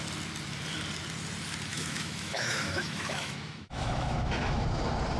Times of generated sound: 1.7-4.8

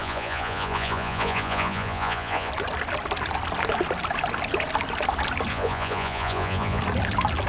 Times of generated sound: 0.0-2.5; 5.5-6.8

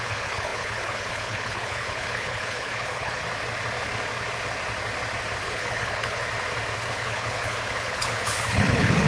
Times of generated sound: 0.0-3.2; 5.4-6.2; 6.9-9.1

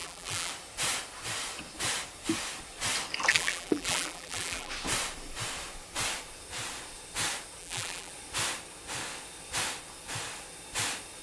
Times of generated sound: 0.0-0.5; 3.3-4.7; 7.6-8.1

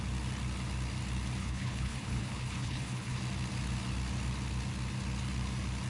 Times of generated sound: 1.4-3.2

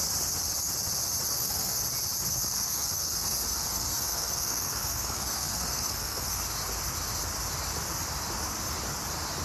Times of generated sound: 1.3-1.8; 2.3-6.4